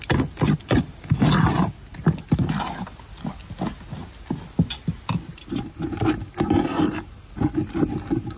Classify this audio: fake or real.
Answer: real